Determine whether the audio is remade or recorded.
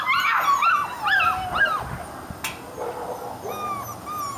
recorded